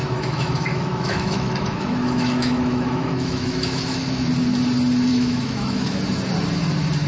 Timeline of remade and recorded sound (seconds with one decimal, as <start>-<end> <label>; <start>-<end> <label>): 0.0-4.3 remade; 4.3-5.1 recorded; 5.1-6.0 remade; 6.0-7.1 recorded